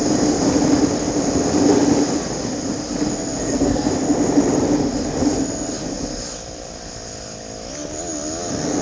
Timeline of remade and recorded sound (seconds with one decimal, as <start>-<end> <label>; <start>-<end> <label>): 0.0-3.4 recorded; 3.4-3.9 remade; 3.9-8.8 recorded